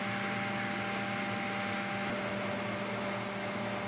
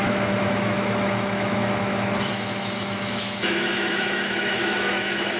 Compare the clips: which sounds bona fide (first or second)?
first